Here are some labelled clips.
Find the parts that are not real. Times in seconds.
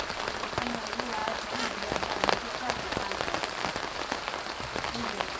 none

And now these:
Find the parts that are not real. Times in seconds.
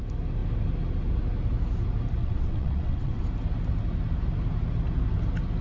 2.2-3.2 (vocoder, WaveNeXt)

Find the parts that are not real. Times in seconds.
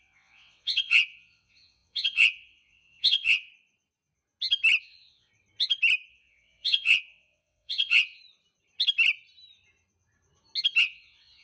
0.0-3.5 (vocoder, WaveNeXt); 4.8-5.3; 6.1-8.2; 10.8-11.4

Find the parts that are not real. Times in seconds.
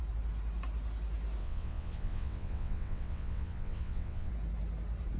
1.4-4.3 (vocoder, WaveNeXt)